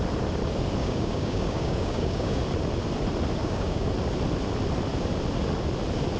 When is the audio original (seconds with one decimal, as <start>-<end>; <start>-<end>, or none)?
0.0-0.8; 2.4-3.4; 3.9-6.2